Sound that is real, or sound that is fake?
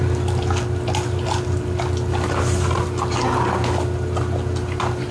real